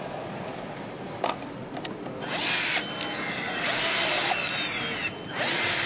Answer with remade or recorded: recorded